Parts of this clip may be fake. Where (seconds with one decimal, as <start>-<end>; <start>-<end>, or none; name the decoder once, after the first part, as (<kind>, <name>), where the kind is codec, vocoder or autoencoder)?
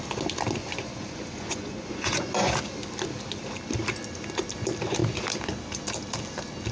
0.6-2.5 (vocoder, Vocos)